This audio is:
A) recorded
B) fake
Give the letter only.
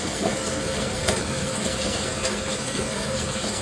B